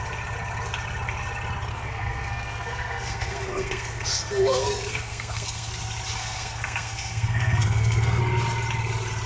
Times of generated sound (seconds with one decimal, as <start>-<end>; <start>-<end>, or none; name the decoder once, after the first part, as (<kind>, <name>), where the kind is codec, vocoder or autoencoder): 1.7-5.7 (codec, SNAC); 6.2-8.2